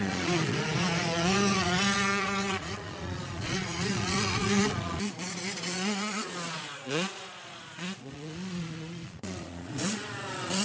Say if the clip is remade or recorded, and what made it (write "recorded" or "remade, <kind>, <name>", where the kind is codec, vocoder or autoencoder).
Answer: remade, vocoder, Vocos